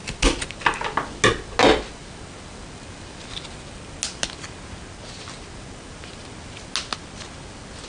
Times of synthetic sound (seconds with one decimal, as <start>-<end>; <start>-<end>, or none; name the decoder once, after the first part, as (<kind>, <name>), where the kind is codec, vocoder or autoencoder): none